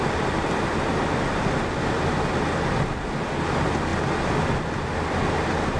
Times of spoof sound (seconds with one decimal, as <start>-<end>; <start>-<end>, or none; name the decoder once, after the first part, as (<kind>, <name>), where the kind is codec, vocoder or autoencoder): none